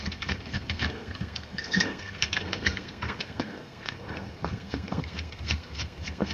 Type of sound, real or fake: fake